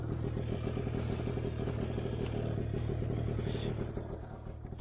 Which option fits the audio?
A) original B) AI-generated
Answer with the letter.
A